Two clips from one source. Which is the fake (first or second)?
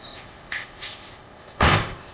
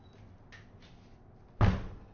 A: first